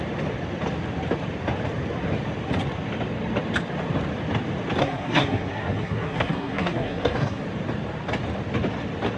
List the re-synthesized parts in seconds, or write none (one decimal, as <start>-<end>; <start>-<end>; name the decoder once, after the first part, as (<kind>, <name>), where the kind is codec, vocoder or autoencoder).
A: 4.8-7.4 (codec, SNAC)